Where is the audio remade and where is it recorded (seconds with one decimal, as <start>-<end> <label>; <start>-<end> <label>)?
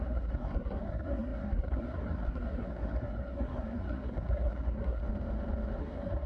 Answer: 0.0-5.0 remade; 5.0-5.8 recorded; 5.8-6.3 remade